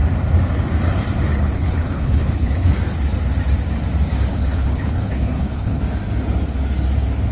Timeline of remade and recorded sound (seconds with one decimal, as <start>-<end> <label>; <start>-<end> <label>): 0.0-1.3 recorded; 1.3-2.8 remade; 2.8-4.3 recorded; 4.3-5.8 remade; 5.8-7.3 recorded

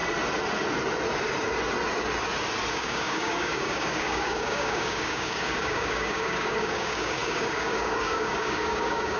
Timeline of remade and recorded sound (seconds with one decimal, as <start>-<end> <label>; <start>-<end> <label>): 0.0-2.7 recorded; 2.7-9.2 remade

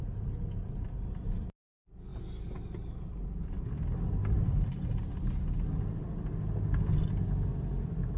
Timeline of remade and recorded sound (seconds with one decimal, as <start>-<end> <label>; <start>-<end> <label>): 0.0-8.2 recorded